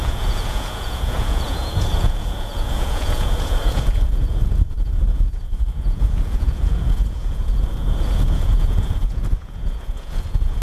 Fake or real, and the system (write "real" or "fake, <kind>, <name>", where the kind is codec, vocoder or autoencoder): fake, vocoder, Vocos